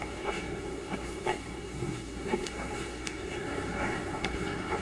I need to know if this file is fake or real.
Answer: fake